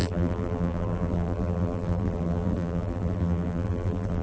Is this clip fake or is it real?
fake